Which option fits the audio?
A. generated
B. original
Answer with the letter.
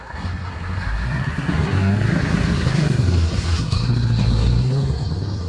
A